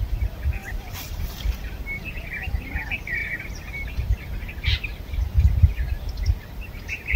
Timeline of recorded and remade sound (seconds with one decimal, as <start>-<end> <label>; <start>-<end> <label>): 0.0-0.6 recorded; 0.6-2.4 remade; 2.4-3.2 recorded; 3.2-4.5 remade; 4.5-7.2 recorded